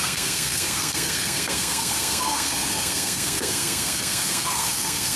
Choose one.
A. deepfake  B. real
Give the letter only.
A